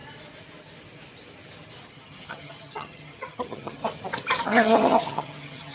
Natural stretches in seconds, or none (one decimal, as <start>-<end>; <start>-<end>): 0.0-1.9; 3.8-4.4